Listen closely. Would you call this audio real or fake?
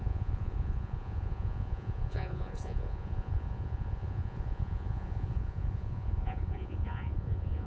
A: fake